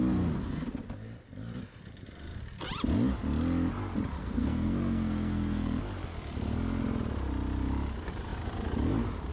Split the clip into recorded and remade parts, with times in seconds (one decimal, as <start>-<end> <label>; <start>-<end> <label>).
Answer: 0.0-4.2 recorded; 4.2-5.8 remade; 5.8-9.3 recorded